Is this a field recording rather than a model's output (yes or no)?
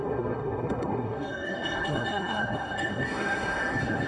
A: no